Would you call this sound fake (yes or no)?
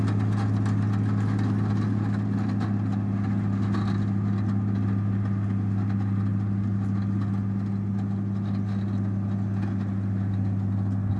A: no